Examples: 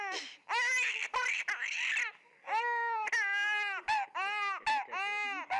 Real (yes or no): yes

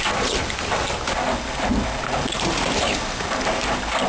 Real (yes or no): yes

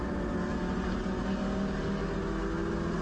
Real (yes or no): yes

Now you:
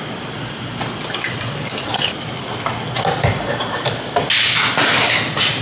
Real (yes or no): yes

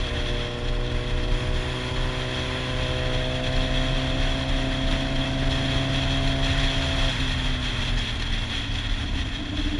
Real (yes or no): yes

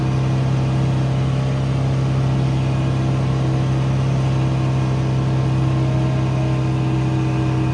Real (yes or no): yes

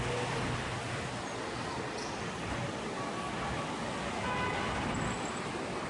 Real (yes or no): yes